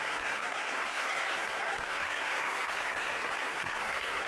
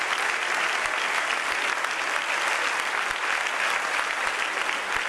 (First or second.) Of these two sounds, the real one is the second